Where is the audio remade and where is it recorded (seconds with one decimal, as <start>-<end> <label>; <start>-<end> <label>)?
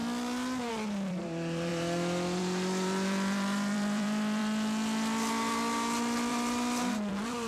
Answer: 0.0-0.7 recorded; 0.7-4.4 remade; 4.4-6.3 recorded; 6.3-7.5 remade